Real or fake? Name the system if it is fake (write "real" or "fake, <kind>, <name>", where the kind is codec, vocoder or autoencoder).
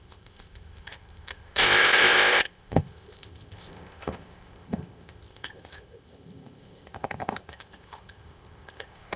fake, codec, ZipCodec